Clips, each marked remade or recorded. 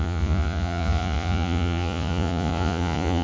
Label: remade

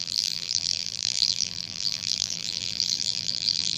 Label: remade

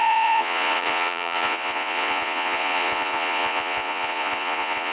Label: remade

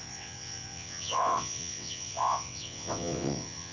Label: remade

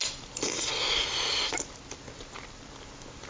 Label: recorded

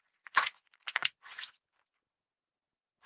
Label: remade